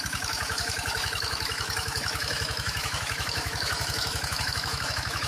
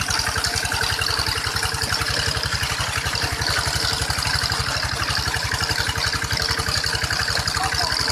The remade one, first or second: first